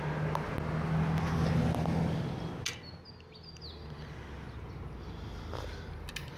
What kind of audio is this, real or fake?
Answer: real